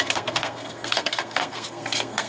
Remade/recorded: remade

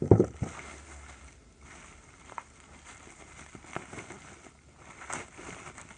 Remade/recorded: recorded